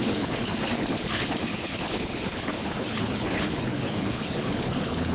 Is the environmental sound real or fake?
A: fake